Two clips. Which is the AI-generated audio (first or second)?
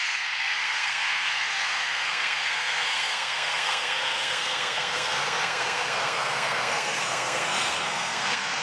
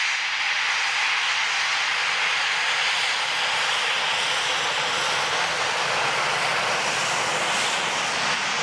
first